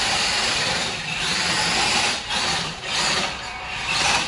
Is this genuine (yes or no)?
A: no